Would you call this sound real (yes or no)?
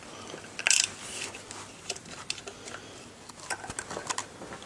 yes